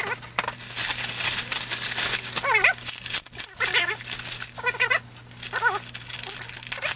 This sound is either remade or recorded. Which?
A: recorded